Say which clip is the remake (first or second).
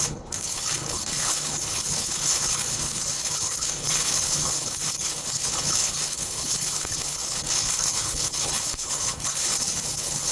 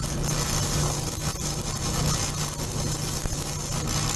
first